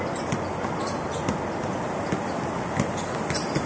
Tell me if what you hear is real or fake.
real